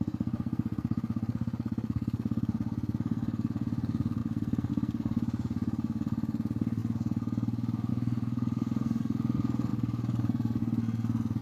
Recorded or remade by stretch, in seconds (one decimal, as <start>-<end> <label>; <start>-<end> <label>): 0.0-11.4 remade